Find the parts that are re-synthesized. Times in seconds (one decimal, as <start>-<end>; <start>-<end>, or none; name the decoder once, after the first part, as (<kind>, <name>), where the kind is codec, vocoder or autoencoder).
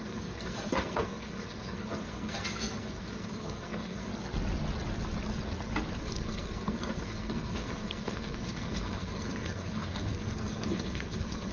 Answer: 0.0-4.1 (codec, SNAC); 6.0-11.5